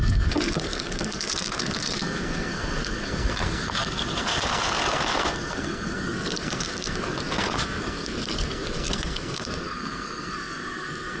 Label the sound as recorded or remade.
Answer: remade